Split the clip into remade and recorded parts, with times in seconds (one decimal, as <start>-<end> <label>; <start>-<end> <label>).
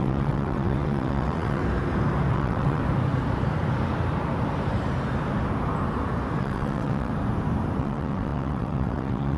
0.0-1.6 remade; 1.6-2.3 recorded; 2.3-2.8 remade; 2.8-6.4 recorded; 6.4-7.1 remade; 7.1-7.8 recorded; 7.8-9.4 remade